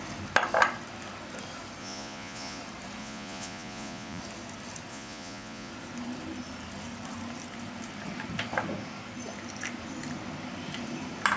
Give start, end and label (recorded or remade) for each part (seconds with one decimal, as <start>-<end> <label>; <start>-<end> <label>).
0.0-1.8 recorded; 1.8-2.6 remade; 2.6-3.0 recorded; 3.0-4.2 remade; 4.2-4.9 recorded; 4.9-5.7 remade; 5.7-11.4 recorded